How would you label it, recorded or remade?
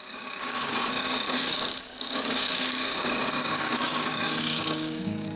remade